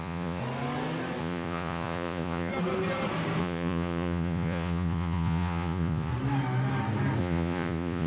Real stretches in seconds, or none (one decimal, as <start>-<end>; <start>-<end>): 0.4-1.2; 2.5-3.4; 6.1-7.2